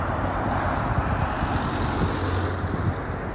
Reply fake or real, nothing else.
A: real